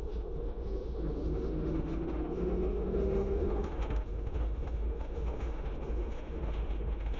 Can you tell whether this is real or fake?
fake